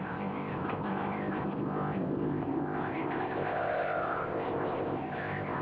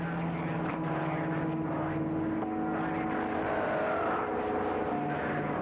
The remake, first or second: first